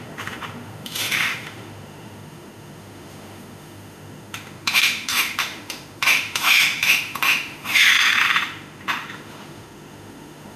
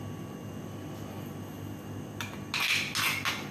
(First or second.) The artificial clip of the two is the first